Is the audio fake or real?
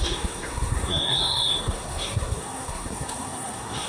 fake